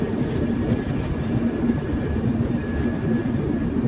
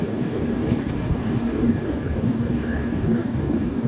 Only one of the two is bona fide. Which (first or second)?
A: first